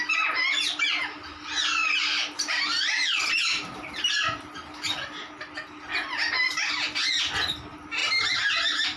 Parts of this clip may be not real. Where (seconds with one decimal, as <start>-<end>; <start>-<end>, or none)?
none